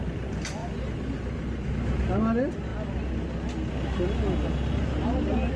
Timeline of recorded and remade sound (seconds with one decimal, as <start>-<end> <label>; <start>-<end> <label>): 0.0-5.6 recorded